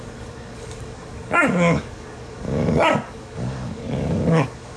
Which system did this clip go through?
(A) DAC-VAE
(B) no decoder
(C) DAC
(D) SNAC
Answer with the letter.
C